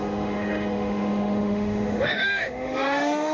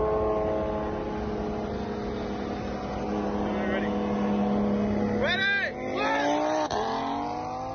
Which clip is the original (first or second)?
second